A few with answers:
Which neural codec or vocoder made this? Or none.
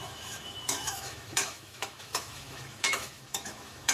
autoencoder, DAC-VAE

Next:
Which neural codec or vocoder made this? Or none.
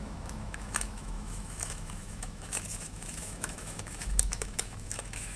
autoencoder, DAC-VAE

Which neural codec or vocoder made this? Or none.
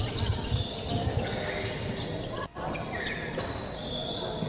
none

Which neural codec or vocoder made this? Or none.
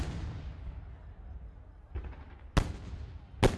none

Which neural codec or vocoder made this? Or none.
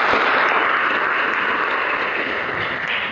none